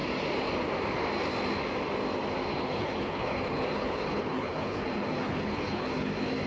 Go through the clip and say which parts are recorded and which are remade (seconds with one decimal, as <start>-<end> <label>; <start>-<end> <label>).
0.0-2.5 recorded; 2.5-6.1 remade; 6.1-6.5 recorded